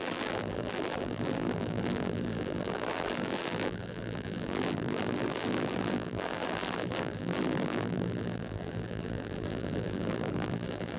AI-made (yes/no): yes